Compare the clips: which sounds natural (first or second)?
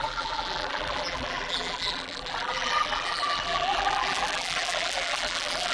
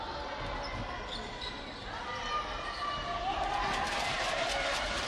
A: second